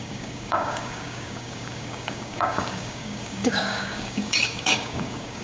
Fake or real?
fake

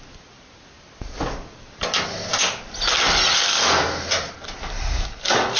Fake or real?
real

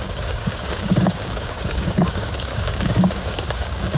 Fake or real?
fake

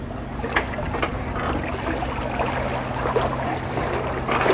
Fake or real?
real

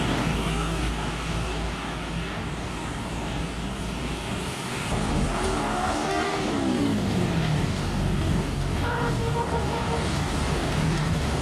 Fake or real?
fake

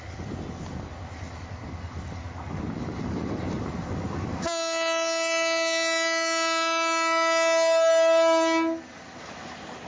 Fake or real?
real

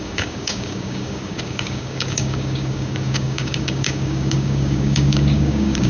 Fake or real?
fake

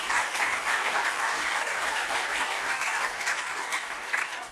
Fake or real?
fake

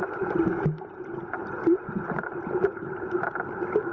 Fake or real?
real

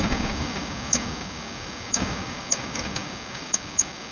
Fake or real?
fake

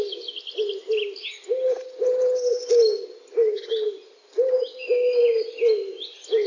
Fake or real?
real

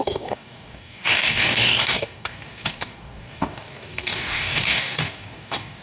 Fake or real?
fake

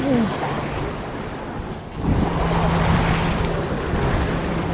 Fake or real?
real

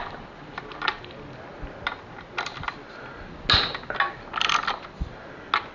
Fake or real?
real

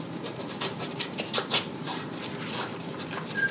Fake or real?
real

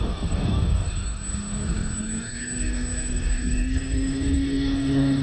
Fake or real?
fake